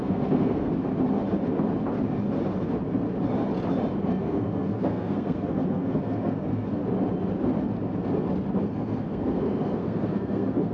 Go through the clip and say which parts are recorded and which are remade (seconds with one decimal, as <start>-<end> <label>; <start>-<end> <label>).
0.0-0.7 remade; 0.7-4.2 recorded; 4.2-6.8 remade; 6.8-8.6 recorded; 8.6-10.7 remade